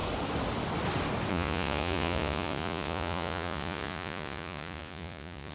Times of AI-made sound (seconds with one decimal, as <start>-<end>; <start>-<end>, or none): 1.3-5.5